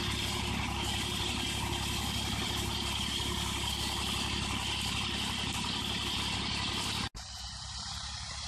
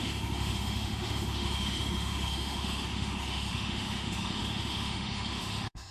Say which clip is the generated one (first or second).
second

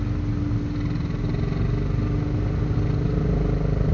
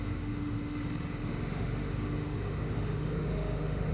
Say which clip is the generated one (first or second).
second